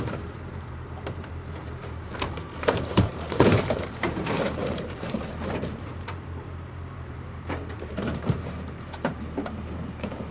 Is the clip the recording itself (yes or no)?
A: no